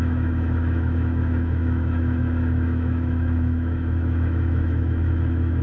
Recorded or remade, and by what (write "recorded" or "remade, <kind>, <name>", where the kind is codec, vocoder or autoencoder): remade, autoencoder, DAC-VAE